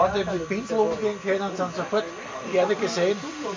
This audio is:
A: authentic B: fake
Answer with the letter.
A